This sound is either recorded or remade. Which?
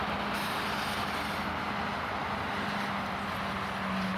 recorded